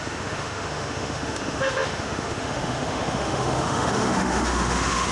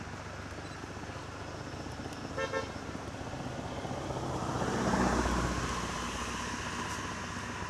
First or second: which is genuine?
second